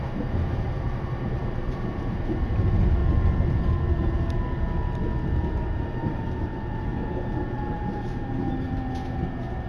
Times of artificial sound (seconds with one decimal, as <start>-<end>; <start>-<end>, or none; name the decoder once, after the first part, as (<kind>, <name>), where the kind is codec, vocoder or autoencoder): 0.0-3.0 (vocoder, BigVGAN v2); 5.5-6.9; 7.7-9.7